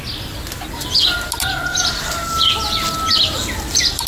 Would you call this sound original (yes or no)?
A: yes